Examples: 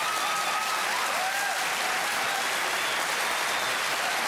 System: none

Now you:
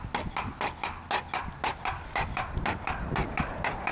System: none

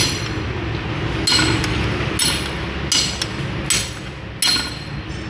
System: none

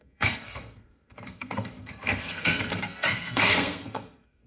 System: codec, SNAC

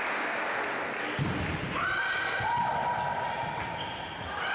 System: none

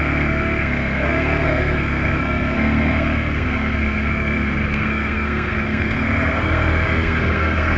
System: codec, SNAC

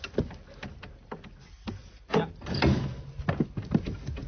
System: none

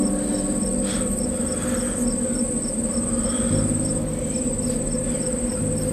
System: none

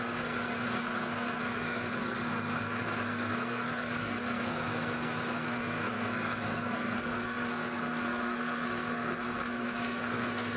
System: codec, SNAC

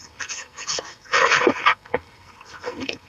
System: codec, SNAC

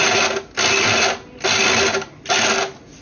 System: none